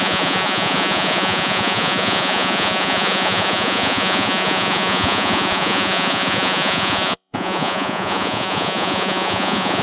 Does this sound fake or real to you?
fake